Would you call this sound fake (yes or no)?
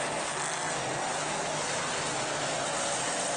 no